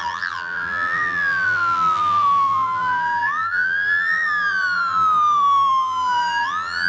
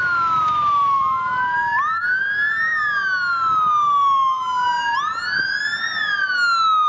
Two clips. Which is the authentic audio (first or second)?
second